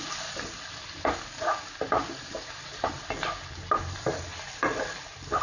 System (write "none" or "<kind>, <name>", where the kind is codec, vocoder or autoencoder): none